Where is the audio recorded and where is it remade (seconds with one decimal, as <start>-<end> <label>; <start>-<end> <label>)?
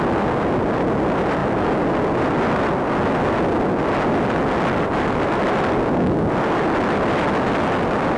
0.0-8.2 recorded